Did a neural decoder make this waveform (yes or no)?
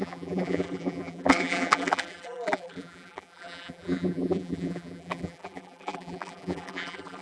yes